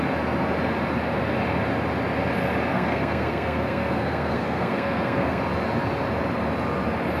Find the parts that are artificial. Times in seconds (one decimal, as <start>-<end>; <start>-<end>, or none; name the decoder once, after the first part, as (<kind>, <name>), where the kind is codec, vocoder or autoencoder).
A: 2.7-5.4 (codec, SNAC)